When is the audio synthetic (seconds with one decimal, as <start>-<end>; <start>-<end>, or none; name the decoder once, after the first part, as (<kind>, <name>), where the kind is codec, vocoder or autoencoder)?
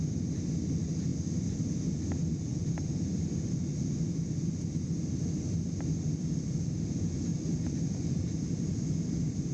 1.1-2.1 (vocoder, BigVGAN v2)